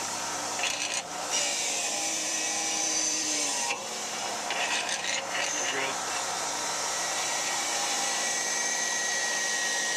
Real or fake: fake